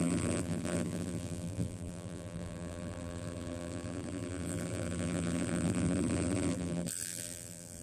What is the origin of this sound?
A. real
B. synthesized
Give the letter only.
B